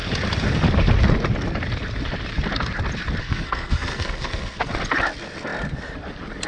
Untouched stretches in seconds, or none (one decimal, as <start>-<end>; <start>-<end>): 0.0-3.2; 4.7-6.5